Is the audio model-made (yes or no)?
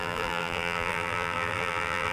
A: yes